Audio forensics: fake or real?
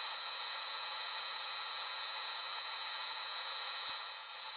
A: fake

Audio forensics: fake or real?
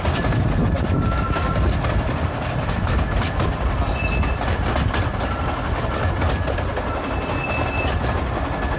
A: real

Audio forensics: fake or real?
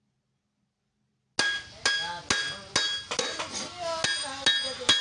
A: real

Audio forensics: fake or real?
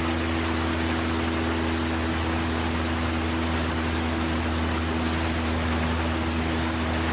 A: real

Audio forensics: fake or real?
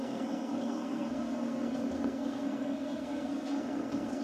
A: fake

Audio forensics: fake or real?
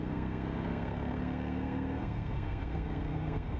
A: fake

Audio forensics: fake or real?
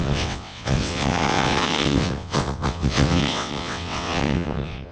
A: fake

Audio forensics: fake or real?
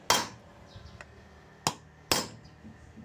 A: real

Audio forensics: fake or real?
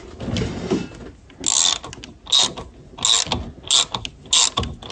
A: real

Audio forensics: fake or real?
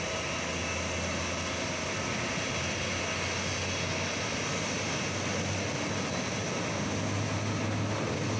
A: real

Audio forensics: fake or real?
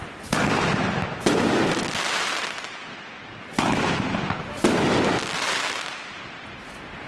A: real